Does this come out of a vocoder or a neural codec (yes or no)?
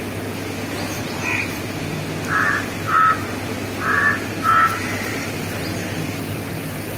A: no